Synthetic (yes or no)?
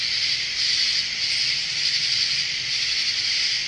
yes